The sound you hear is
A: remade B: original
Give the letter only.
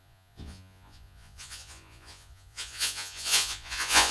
A